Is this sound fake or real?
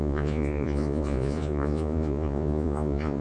fake